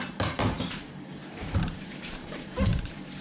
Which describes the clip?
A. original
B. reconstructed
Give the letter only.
B